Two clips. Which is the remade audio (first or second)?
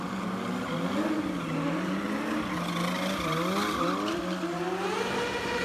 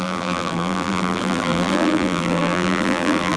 second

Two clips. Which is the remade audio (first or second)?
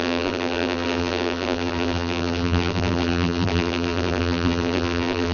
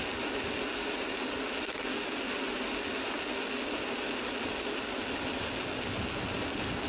first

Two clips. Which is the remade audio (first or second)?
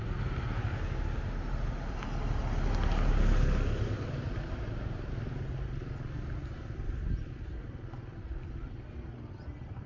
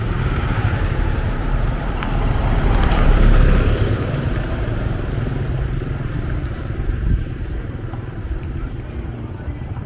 second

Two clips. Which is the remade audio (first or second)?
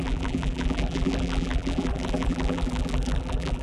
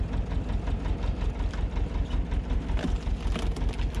first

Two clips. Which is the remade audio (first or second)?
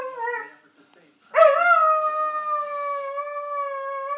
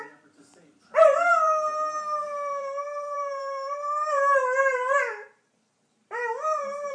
second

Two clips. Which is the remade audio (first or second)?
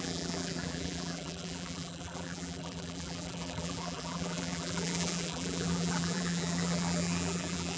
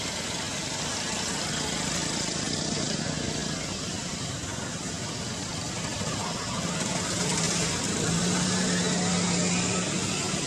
first